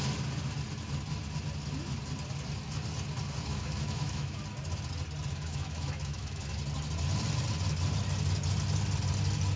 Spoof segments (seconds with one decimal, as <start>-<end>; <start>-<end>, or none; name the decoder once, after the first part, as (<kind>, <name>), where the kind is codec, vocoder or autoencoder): 3.5-4.4 (autoencoder, DAC-VAE); 5.3-6.6